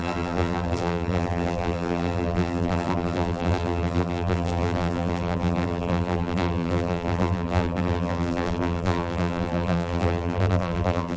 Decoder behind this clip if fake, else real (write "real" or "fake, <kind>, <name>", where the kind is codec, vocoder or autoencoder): fake, vocoder, BigVGAN v2